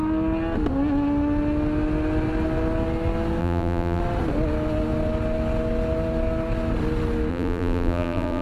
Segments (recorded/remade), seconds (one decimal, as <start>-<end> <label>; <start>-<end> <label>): 0.0-3.4 recorded; 3.4-4.0 remade; 4.0-7.3 recorded; 7.3-8.4 remade